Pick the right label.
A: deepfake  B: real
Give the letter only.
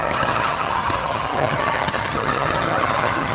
A